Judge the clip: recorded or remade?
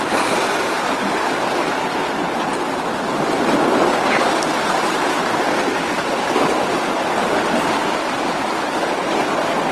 recorded